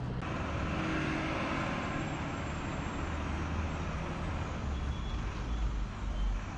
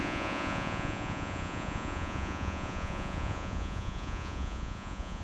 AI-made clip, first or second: second